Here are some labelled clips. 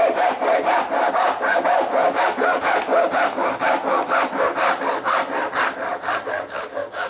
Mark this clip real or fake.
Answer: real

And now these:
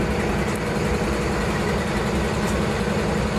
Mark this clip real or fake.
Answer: real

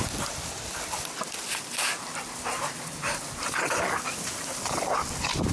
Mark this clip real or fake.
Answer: real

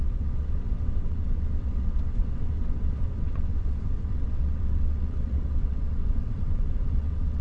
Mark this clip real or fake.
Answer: fake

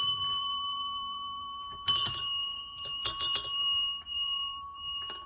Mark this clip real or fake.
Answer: fake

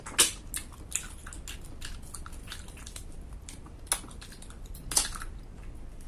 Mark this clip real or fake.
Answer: real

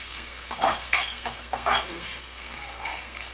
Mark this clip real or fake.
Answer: fake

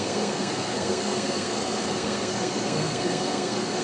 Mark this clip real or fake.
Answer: fake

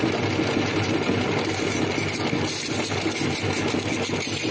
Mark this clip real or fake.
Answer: real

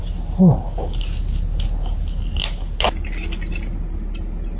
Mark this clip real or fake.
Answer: real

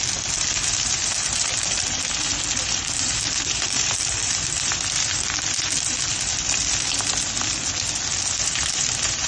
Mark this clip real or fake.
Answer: fake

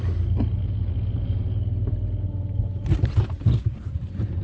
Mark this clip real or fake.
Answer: real